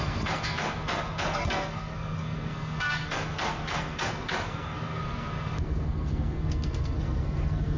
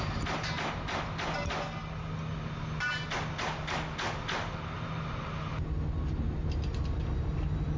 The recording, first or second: second